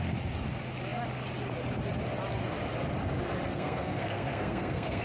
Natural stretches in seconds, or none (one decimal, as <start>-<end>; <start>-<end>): 0.0-3.5